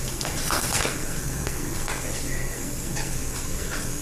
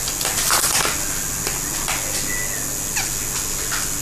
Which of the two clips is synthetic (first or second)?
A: first